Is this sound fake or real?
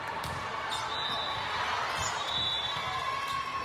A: real